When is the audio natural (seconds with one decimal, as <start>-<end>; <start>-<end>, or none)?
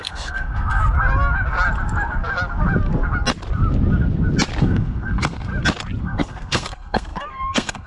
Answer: 0.8-4.6; 5.5-6.0